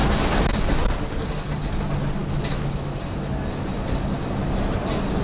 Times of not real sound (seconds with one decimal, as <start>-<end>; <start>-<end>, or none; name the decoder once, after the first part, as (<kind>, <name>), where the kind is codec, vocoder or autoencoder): 2.2-3.0 (autoencoder, DAC-VAE)